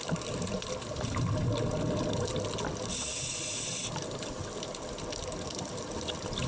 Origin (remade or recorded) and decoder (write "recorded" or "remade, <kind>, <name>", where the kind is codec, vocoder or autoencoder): recorded